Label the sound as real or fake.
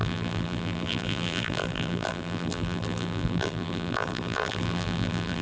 fake